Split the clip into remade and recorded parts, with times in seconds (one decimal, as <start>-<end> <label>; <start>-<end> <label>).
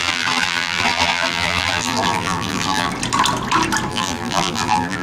0.0-2.9 remade; 2.9-3.9 recorded; 3.9-5.0 remade